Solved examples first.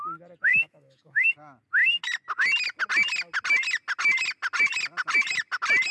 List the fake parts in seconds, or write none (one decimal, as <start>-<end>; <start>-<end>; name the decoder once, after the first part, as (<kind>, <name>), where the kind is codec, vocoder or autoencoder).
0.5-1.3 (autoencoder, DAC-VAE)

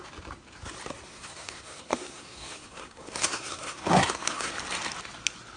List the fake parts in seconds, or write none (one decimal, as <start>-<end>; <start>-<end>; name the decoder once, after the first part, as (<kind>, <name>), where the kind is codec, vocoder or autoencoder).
1.1-4.5 (codec, SNAC)

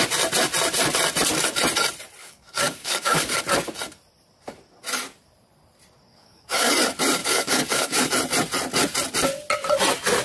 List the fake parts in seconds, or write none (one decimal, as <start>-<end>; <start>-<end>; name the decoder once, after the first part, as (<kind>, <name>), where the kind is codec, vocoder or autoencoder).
2.2-3.4 (codec, DAC); 6.1-6.7; 7.2-8.1